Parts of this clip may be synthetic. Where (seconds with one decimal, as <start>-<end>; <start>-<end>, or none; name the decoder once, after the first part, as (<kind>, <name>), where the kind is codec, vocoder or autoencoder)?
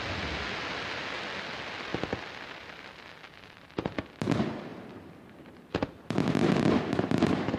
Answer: none